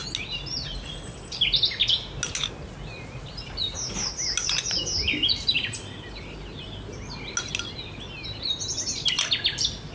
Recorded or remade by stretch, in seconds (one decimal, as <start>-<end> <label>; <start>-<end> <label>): 0.0-9.9 recorded